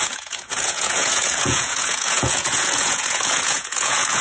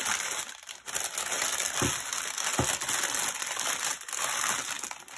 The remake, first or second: first